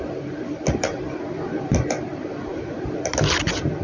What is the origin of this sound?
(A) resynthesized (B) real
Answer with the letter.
A